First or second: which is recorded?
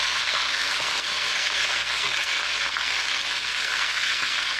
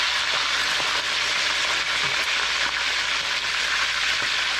second